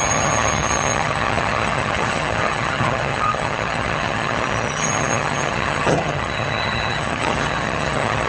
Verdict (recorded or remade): remade